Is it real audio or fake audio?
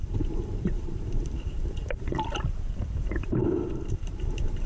fake